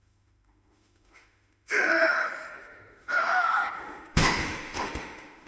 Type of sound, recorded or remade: remade